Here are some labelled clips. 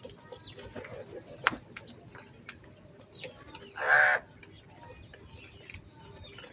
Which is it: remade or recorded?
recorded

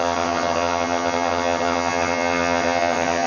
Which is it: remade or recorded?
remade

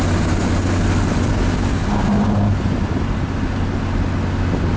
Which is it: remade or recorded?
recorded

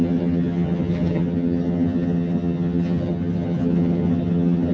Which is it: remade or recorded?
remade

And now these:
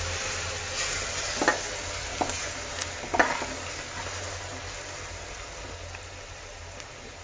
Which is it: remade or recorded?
recorded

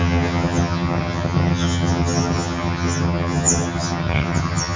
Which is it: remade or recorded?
remade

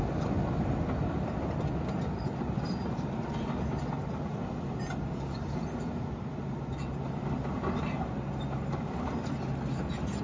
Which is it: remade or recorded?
recorded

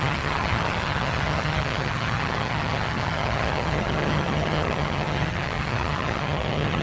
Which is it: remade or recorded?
remade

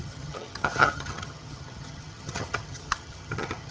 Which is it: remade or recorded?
remade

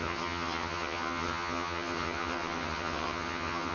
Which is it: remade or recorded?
remade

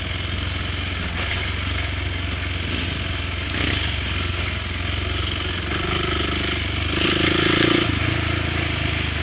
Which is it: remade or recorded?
recorded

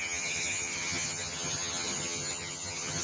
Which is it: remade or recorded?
remade